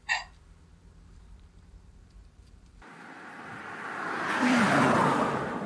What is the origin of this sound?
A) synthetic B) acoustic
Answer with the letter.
A